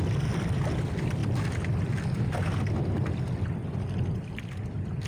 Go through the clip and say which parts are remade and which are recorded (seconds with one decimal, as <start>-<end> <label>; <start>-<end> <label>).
0.0-5.1 recorded